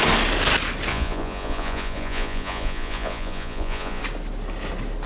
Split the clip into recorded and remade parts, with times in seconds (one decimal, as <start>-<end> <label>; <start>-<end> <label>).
0.0-0.9 recorded; 0.9-4.0 remade; 4.0-5.1 recorded